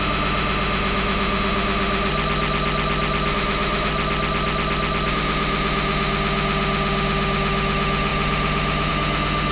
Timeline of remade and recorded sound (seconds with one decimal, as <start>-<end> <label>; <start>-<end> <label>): 0.0-2.1 remade; 2.1-3.3 recorded; 3.3-3.9 remade; 3.9-5.1 recorded; 5.1-9.5 remade